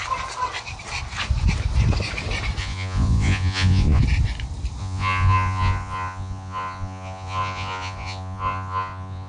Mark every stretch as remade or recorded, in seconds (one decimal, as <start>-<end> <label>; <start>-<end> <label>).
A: 0.0-2.6 recorded; 2.6-4.0 remade; 4.0-4.8 recorded; 4.8-9.3 remade